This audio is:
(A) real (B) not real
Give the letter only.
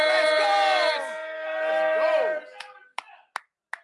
A